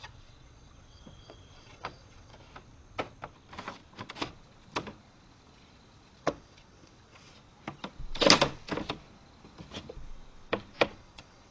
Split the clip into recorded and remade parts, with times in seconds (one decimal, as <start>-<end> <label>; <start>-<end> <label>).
0.0-2.3 remade; 2.3-6.2 recorded; 6.2-7.3 remade; 7.3-10.9 recorded; 10.9-11.5 remade